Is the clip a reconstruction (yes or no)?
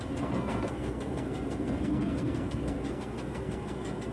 yes